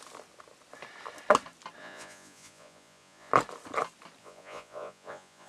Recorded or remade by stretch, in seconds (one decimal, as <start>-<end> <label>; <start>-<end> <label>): 0.0-1.8 recorded; 1.8-3.3 remade; 3.3-4.2 recorded; 4.2-5.5 remade